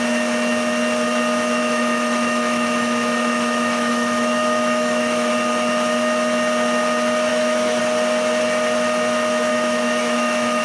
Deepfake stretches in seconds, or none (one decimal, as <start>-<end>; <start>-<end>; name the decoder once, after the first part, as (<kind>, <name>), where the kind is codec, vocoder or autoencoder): 1.6-5.3 (autoencoder, DAC-VAE); 7.3-7.8; 9.5-10.6